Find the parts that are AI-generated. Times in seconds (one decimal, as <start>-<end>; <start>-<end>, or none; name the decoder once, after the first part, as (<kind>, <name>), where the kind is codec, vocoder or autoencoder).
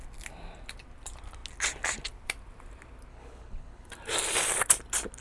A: 3.1-3.9 (codec, HILCodec)